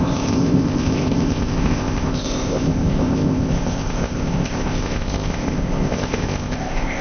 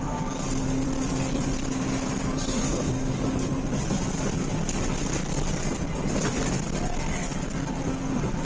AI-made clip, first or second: first